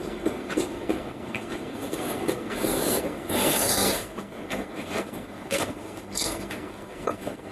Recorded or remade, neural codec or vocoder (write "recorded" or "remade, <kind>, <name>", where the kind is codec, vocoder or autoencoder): remade, codec, SNAC